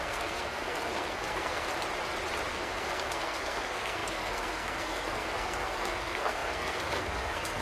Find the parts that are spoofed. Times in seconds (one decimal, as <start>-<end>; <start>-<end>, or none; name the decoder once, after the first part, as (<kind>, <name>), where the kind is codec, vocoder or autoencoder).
0.0-1.7 (codec, SNAC); 2.5-7.6